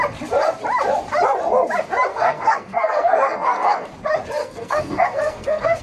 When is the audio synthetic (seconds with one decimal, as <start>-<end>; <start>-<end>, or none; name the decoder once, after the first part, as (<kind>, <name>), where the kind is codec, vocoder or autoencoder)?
2.1-3.9 (codec, SNAC); 4.4-5.8